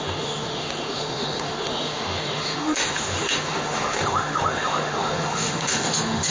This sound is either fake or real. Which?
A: fake